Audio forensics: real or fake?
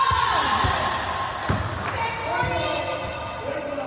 real